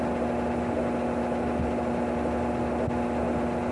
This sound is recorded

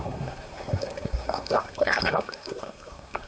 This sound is remade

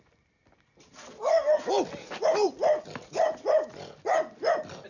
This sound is recorded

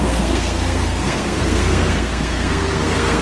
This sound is remade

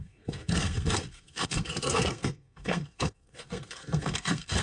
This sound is remade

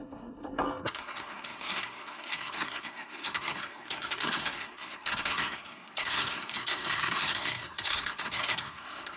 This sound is remade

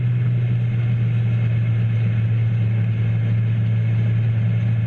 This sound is recorded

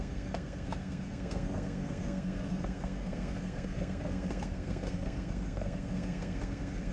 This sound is remade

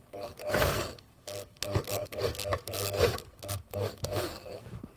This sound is remade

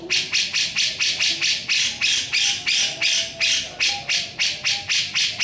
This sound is recorded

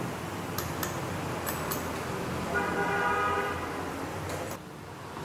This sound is recorded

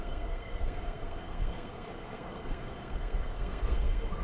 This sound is remade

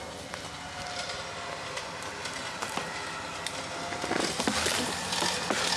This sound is recorded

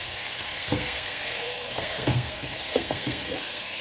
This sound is remade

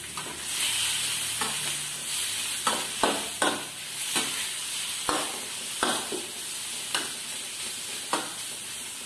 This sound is recorded